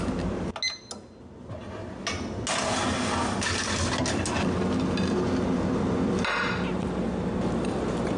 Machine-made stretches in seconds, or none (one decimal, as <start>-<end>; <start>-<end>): none